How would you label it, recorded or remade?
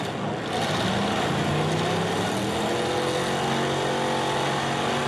recorded